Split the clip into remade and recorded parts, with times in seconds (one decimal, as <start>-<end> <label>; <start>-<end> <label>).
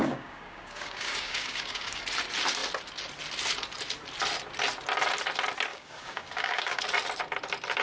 0.0-2.0 remade; 2.0-5.7 recorded; 5.7-6.8 remade; 6.8-7.8 recorded